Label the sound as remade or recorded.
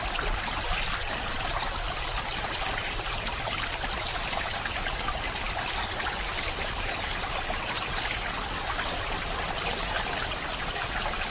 recorded